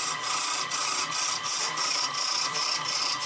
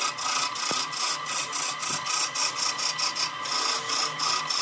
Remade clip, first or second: first